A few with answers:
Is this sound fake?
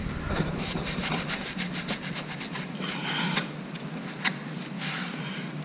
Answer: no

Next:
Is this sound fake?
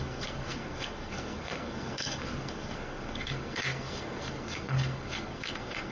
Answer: yes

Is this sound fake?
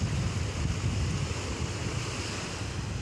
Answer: no